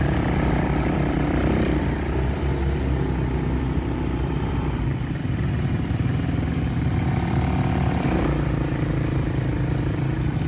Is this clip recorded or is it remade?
remade